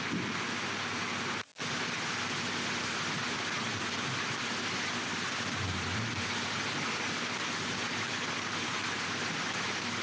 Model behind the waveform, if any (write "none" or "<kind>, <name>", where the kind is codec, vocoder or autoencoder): none